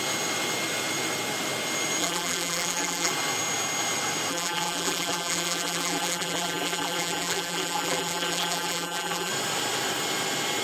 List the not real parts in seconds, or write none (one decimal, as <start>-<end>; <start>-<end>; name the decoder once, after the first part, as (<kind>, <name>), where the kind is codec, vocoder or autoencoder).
2.0-3.1 (vocoder, BigVGAN v2); 4.3-9.3